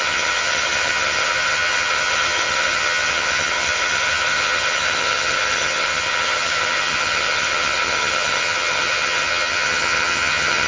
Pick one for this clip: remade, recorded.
remade